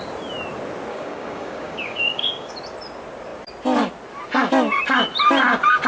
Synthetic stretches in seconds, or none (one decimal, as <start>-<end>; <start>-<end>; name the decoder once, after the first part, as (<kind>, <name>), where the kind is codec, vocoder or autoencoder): 0.9-2.5 (codec, DAC)

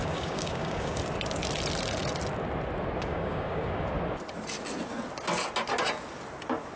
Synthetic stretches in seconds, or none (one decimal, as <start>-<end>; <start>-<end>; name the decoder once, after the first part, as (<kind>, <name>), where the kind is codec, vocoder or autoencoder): 0.0-1.0 (codec, DAC); 3.1-3.8